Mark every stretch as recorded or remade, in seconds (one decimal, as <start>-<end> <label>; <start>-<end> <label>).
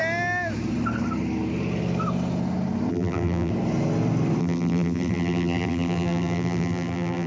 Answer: 0.0-2.9 recorded; 2.9-3.5 remade; 3.5-4.4 recorded; 4.4-7.3 remade